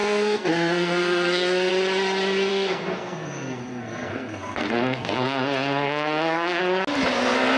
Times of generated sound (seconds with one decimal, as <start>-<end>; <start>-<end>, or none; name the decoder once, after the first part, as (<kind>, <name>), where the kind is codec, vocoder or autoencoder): 0.0-1.7 (codec, SNAC); 2.5-6.6